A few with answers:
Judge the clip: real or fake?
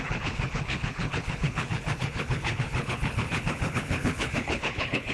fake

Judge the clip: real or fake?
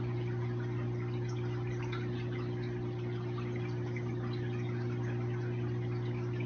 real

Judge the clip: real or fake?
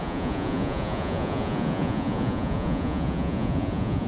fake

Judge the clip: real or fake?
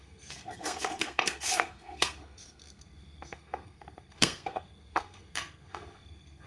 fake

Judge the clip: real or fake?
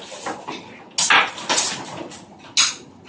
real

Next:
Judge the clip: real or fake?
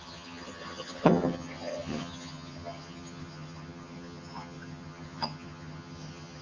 fake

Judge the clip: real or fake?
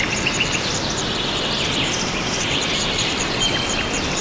fake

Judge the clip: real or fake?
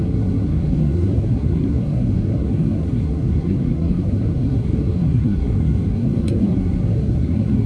fake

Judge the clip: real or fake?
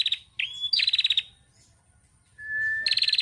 real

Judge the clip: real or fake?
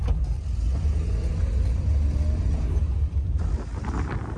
real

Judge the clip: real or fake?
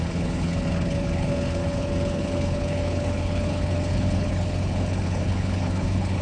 fake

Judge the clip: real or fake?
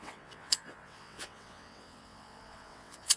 fake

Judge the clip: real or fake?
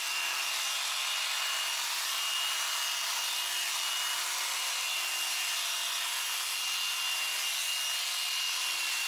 real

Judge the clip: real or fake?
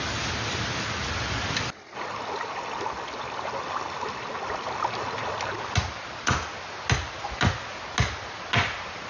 real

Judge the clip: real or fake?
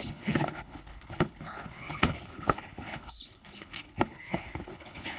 fake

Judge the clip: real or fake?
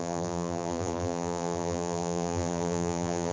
fake